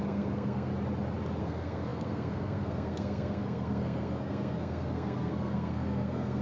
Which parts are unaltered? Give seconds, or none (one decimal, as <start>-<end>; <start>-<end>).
0.7-1.4